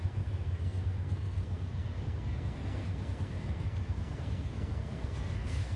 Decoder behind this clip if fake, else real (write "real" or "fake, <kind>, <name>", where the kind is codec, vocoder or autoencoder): fake, codec, SNAC